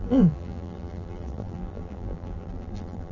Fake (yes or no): yes